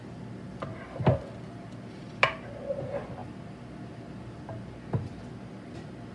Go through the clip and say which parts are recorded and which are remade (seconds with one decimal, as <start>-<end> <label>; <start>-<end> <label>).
0.0-6.1 recorded